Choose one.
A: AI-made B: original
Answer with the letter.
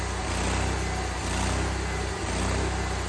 B